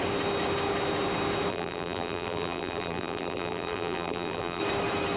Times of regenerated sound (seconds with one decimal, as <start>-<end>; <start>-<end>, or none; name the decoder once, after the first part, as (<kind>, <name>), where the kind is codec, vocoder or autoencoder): 1.5-4.6 (vocoder, BigVGAN v2)